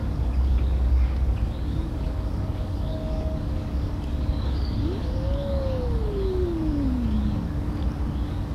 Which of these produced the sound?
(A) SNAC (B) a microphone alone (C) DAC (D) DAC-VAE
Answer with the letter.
C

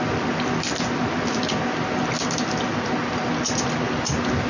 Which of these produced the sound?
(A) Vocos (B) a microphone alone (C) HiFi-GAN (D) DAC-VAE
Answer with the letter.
B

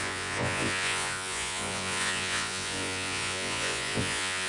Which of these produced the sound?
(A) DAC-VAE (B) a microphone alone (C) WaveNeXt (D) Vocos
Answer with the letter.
D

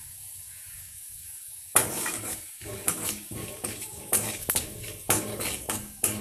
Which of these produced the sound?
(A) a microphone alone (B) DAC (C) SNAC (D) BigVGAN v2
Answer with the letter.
B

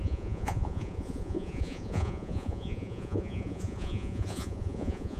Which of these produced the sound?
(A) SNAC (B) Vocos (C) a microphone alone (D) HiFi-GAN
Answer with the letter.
B